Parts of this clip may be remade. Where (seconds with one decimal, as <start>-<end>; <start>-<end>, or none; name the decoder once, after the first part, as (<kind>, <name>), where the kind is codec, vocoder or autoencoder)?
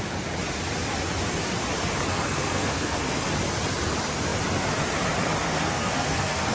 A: 2.1-3.2 (codec, SNAC); 5.4-6.5